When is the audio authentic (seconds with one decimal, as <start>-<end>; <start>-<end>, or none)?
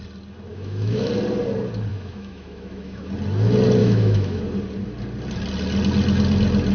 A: 0.0-0.5; 1.1-1.9; 3.1-3.8; 4.4-6.7